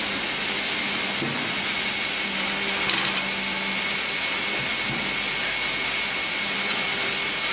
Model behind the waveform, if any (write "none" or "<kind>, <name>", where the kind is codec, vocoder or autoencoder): none